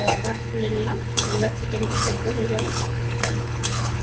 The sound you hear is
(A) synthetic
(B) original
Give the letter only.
A